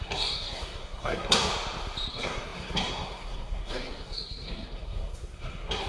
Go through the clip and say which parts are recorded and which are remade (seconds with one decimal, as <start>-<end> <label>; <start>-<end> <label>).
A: 0.0-1.5 remade; 1.5-2.1 recorded; 2.1-5.9 remade